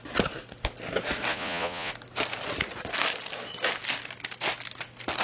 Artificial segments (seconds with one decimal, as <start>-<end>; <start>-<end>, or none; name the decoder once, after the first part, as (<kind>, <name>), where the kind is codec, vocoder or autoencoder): 1.3-1.9 (vocoder, Vocos)